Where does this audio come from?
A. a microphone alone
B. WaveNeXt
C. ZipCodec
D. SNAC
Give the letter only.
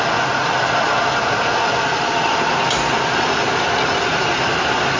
A